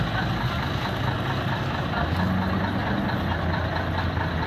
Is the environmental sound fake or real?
real